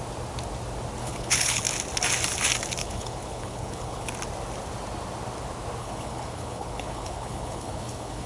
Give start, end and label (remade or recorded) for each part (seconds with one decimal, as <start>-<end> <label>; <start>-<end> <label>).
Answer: 0.0-1.0 recorded; 1.0-1.6 remade; 1.6-2.8 recorded; 2.8-4.1 remade; 4.1-5.8 recorded; 5.8-8.3 remade